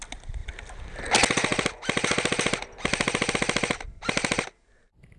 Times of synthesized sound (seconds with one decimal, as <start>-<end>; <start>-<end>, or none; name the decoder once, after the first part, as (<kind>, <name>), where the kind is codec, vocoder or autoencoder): none